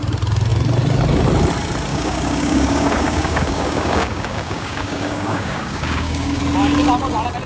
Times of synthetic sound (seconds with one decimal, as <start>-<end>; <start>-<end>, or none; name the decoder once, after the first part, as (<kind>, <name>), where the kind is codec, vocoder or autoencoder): 1.9-6.4 (codec, DAC)